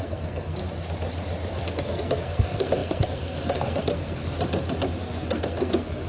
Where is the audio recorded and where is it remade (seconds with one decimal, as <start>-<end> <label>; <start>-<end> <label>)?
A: 0.0-0.6 remade; 0.6-1.6 recorded; 1.6-4.2 remade; 4.2-5.0 recorded; 5.0-6.1 remade